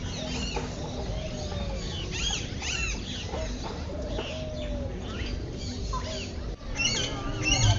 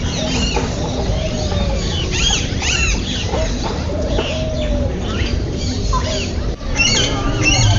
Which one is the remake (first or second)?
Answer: second